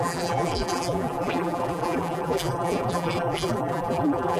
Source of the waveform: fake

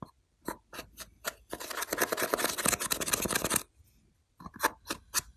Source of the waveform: real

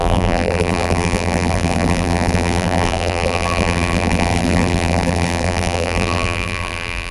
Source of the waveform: fake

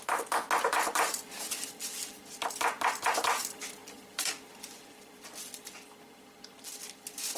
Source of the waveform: real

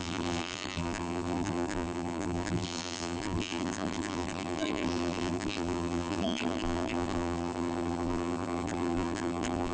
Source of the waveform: fake